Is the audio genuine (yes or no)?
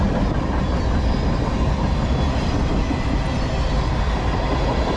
yes